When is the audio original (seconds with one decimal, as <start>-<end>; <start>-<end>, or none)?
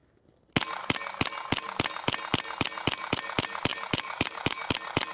0.0-3.7; 4.6-5.1